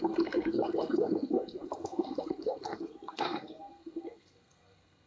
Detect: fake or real fake